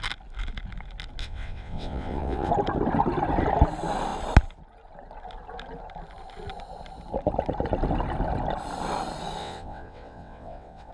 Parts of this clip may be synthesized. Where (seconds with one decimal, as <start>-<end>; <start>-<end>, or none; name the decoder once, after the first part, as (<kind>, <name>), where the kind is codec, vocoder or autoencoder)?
1.2-2.5 (vocoder, WaveNeXt); 9.4-10.9